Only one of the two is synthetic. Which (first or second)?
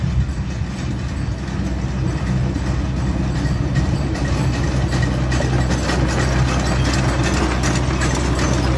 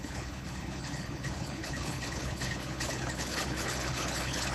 second